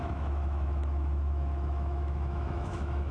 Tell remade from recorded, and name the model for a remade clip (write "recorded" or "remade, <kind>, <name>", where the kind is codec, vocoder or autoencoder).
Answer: remade, autoencoder, DAC-VAE